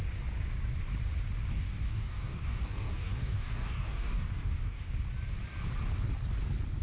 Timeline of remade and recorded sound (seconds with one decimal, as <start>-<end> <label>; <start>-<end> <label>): 0.0-1.5 recorded; 1.5-4.9 remade; 4.9-6.8 recorded